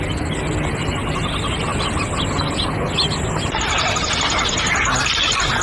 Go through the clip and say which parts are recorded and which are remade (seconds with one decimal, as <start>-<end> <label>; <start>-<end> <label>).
0.0-5.6 recorded